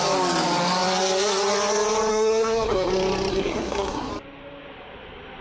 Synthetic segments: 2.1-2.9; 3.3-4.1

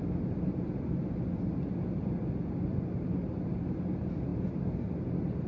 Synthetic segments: none

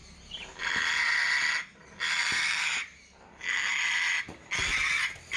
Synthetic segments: 2.2-3.8

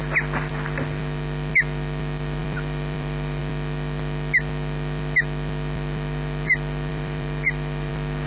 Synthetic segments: 2.4-3.4; 6.9-7.9

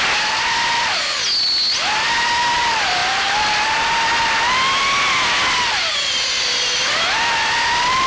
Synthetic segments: none